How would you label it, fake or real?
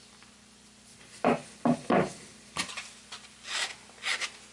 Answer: real